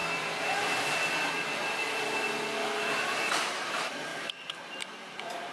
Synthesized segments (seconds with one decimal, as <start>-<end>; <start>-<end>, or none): 2.8-4.1; 4.6-5.5